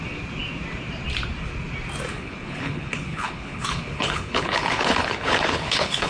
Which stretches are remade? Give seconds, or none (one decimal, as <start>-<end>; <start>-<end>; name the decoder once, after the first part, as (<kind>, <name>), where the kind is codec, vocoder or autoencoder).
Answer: 2.1-6.1 (codec, HILCodec)